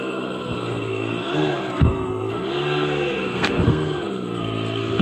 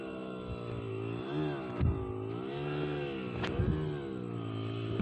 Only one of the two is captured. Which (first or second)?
second